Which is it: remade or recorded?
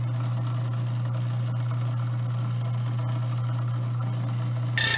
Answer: recorded